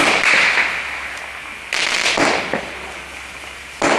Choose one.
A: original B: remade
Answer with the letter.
A